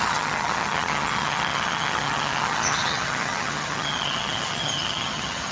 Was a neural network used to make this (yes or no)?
yes